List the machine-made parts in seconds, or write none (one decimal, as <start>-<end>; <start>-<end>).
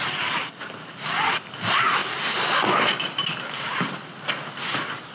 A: none